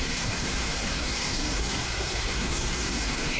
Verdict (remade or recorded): remade